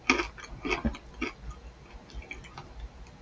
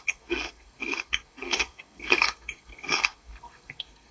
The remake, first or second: second